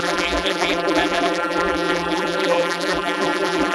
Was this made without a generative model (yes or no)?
no